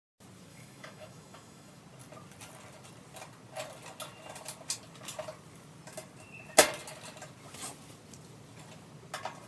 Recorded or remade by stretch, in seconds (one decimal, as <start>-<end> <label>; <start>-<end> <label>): 0.0-0.5 recorded; 0.5-1.8 remade; 1.8-9.5 recorded